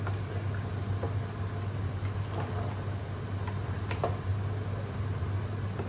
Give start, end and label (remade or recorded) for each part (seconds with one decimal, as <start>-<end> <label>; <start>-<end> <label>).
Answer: 0.0-5.9 recorded